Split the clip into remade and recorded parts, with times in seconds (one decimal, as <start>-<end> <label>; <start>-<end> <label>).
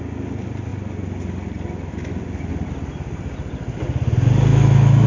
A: 0.0-4.5 recorded; 4.5-5.1 remade